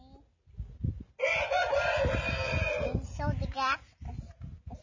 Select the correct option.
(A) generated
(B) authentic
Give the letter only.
B